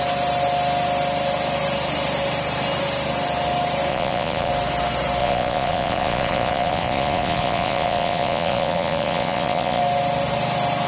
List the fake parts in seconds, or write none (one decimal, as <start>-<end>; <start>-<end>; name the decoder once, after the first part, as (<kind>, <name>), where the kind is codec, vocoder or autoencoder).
3.9-4.5 (vocoder, Vocos); 5.2-9.8